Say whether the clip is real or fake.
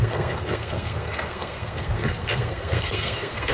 fake